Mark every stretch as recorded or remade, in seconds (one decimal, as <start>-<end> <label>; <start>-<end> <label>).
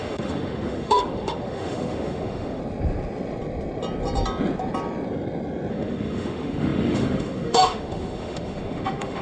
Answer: 0.0-2.6 remade; 2.6-5.7 recorded; 5.7-9.2 remade